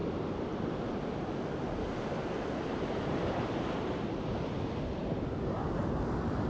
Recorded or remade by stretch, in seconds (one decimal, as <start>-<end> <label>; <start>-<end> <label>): 0.0-2.2 recorded; 2.2-4.0 remade; 4.0-6.5 recorded